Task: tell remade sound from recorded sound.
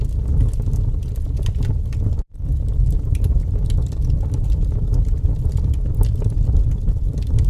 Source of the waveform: remade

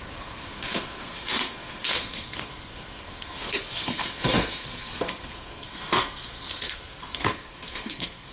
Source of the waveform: remade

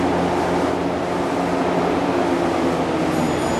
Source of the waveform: recorded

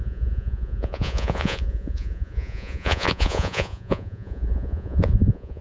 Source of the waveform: remade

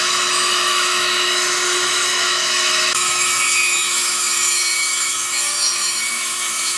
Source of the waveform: remade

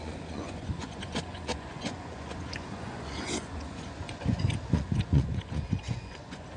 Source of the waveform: remade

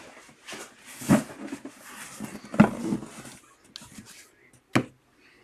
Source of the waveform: recorded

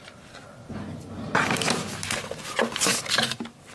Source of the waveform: recorded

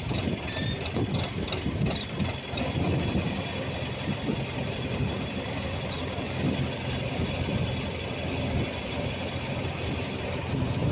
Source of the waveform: remade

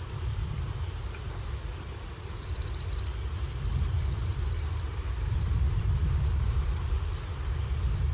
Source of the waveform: remade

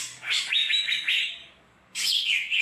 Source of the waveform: remade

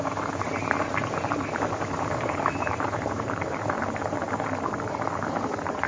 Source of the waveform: remade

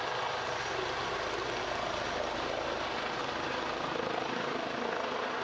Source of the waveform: recorded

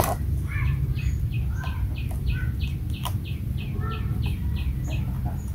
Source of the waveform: recorded